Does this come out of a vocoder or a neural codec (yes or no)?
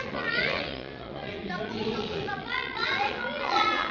yes